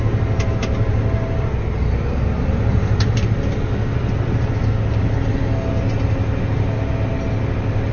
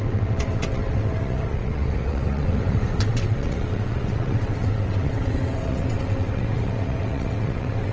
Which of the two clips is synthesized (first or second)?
second